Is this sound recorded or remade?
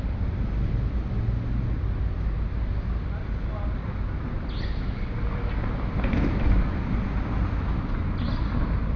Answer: recorded